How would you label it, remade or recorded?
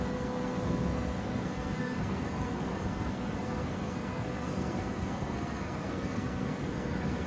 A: remade